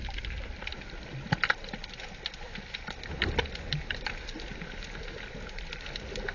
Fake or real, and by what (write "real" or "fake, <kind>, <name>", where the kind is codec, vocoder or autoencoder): real